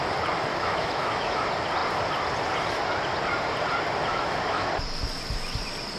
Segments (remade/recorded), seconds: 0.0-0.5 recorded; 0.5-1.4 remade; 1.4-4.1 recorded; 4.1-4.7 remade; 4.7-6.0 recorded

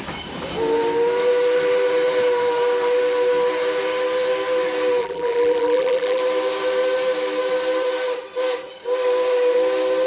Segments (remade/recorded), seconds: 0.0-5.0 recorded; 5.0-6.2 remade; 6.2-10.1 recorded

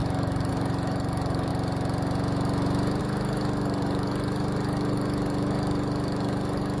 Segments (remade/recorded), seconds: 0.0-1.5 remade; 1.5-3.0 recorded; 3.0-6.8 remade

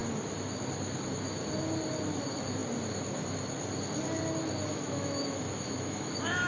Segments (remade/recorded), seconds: 0.0-4.7 recorded; 4.7-6.5 remade

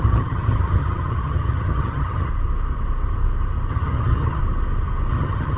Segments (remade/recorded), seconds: 0.0-2.3 remade; 2.3-3.7 recorded; 3.7-4.4 remade; 4.4-5.1 recorded; 5.1-5.6 remade

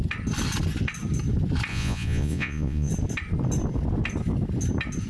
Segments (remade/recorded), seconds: 0.0-1.7 recorded; 1.7-2.9 remade; 2.9-5.1 recorded

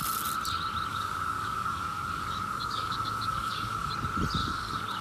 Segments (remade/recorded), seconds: 0.0-0.9 recorded; 0.9-3.9 remade; 3.9-4.4 recorded; 4.4-5.0 remade